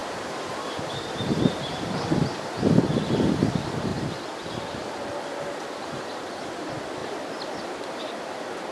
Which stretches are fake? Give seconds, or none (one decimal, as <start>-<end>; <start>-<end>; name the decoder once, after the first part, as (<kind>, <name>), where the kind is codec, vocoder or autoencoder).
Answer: 0.0-1.5 (vocoder, BigVGAN v2); 3.9-4.5